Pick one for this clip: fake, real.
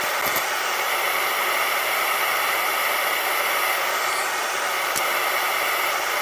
real